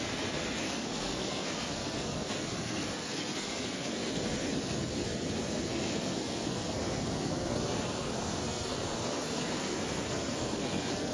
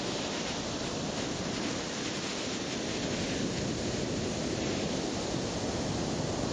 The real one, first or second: second